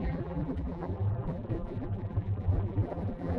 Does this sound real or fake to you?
fake